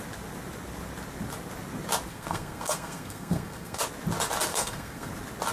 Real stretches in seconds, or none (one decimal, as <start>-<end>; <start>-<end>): 0.0-2.1; 3.8-4.5; 5.1-5.5